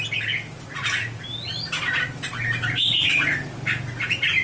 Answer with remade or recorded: recorded